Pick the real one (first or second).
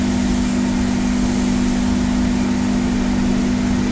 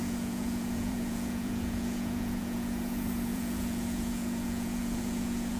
first